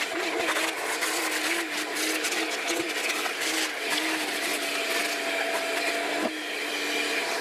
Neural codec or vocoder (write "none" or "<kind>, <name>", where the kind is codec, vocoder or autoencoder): none